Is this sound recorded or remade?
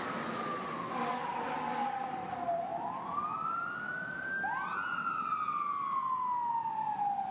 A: recorded